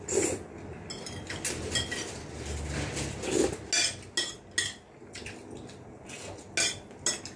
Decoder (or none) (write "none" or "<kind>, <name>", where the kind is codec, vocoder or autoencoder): none